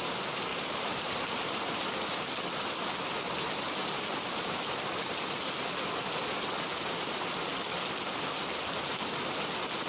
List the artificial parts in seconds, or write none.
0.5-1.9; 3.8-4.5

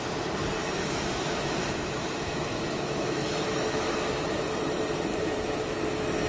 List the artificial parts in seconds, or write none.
0.6-4.4; 5.1-5.8

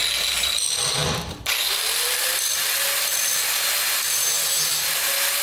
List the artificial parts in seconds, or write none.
1.0-4.2